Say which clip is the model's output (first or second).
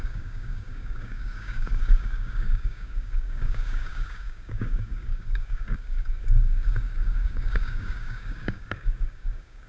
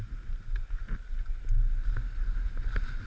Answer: first